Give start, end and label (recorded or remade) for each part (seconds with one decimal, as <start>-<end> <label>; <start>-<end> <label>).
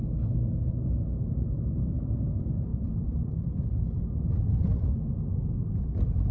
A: 0.0-6.3 recorded